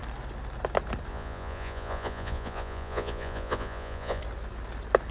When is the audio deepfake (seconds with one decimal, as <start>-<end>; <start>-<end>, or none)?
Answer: 1.1-4.2